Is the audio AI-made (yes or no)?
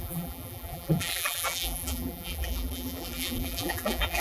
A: yes